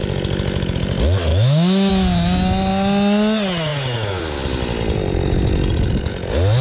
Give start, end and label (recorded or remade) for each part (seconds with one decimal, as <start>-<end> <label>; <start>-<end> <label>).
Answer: 0.0-1.3 recorded; 1.3-1.9 remade; 1.9-6.6 recorded